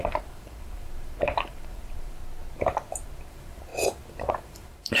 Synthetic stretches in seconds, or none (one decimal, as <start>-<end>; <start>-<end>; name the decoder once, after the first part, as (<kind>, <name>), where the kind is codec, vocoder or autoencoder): 0.0-2.2 (vocoder, BigVGAN v2); 3.3-3.7; 4.3-5.0